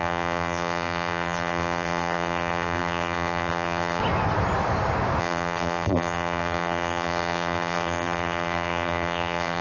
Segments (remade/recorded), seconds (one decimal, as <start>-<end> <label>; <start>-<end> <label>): 0.0-4.0 remade; 4.0-5.2 recorded; 5.2-9.6 remade